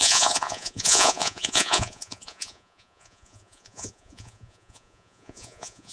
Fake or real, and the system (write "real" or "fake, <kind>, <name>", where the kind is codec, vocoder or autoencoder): fake, vocoder, Vocos